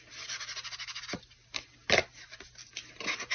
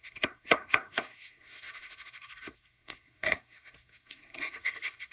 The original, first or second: first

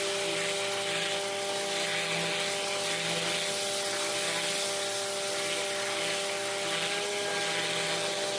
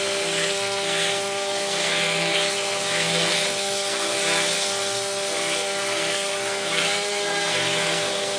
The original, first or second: first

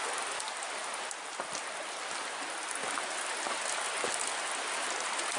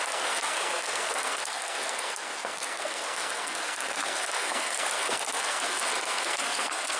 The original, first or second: first